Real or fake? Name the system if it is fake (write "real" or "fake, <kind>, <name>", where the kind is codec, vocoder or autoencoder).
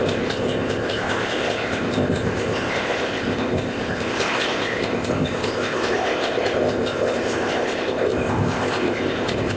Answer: fake, codec, ZipCodec